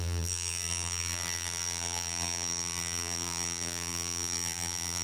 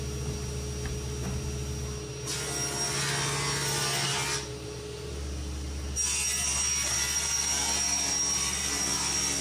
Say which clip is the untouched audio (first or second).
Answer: second